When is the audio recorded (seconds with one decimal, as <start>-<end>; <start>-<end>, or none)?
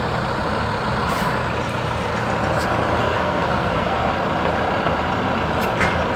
0.0-3.0; 4.1-6.2